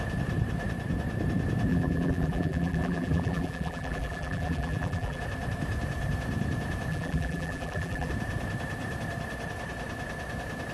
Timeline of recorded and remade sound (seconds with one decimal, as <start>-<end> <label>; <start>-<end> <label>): 0.0-1.7 recorded; 1.7-5.2 remade; 5.2-6.9 recorded; 6.9-8.1 remade; 8.1-10.7 recorded

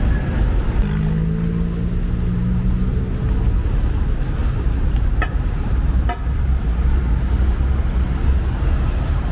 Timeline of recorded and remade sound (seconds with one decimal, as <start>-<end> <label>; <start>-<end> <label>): 0.0-9.3 recorded

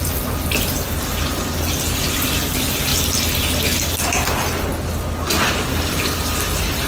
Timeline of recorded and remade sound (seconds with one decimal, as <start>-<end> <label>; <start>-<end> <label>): 0.0-6.9 recorded

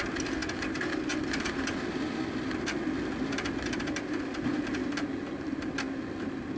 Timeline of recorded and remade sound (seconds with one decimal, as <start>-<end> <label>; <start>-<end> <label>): 0.0-6.6 recorded

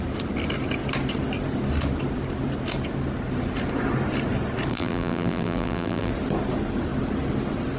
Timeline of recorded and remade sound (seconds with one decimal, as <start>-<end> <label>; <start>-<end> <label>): 0.0-4.7 recorded; 4.7-6.1 remade; 6.1-7.8 recorded

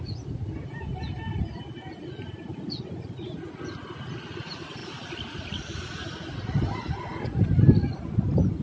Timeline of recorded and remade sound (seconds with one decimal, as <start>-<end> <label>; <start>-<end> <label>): 0.0-4.8 recorded; 4.8-8.0 remade; 8.0-8.6 recorded

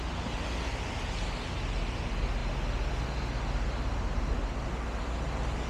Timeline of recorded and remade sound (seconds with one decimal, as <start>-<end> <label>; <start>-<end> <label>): 0.0-5.7 recorded